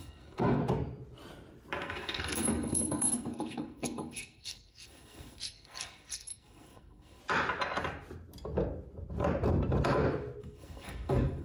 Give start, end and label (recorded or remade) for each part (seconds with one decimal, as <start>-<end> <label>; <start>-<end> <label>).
0.0-0.6 remade; 0.6-1.8 recorded; 1.8-7.2 remade; 7.2-10.4 recorded; 10.4-11.4 remade